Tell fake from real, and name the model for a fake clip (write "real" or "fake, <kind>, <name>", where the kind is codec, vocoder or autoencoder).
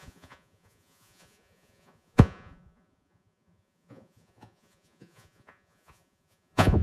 fake, vocoder, Vocos